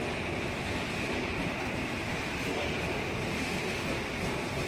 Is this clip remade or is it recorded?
remade